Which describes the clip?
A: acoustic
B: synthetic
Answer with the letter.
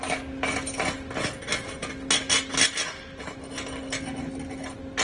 A